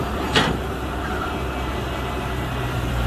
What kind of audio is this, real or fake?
fake